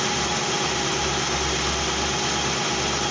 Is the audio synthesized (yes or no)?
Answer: no